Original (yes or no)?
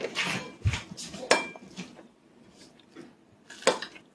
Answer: yes